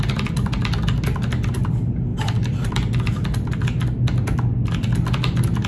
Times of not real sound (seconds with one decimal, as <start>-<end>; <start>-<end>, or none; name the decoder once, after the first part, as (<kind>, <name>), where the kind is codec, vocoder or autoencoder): none